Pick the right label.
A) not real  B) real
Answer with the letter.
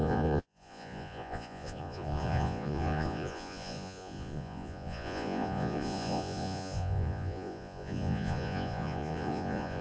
A